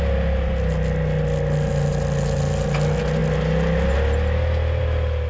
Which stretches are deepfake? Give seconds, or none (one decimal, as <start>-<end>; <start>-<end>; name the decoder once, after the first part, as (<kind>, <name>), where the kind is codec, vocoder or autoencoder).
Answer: none